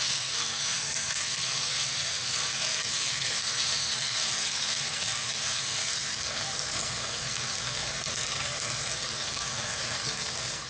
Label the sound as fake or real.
fake